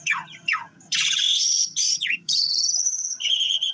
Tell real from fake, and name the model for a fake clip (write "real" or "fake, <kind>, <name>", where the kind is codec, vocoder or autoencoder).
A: fake, vocoder, HiFi-GAN